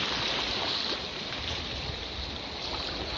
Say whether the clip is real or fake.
real